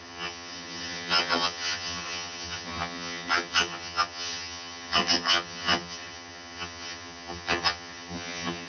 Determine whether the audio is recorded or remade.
remade